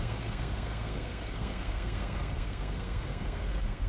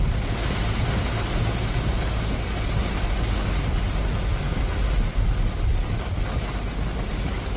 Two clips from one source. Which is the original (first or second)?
second